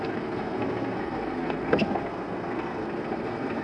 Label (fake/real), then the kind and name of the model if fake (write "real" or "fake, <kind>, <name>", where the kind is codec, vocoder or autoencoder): fake, codec, SNAC